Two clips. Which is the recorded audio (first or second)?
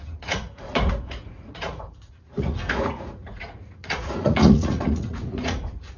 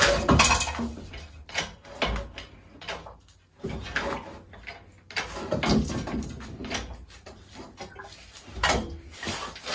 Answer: second